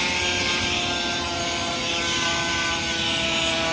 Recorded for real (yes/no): yes